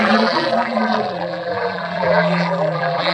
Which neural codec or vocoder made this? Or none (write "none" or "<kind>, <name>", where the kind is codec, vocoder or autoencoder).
vocoder, BigVGAN v2